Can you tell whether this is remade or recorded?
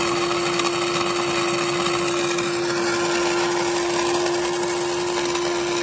recorded